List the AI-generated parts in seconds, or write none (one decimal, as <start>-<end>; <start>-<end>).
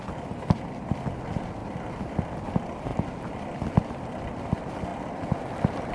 none